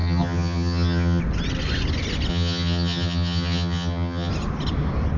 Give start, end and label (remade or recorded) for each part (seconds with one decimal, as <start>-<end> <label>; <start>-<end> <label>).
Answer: 0.0-1.2 remade; 1.2-2.3 recorded; 2.3-4.3 remade; 4.3-5.2 recorded